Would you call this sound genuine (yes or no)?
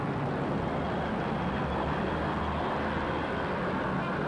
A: yes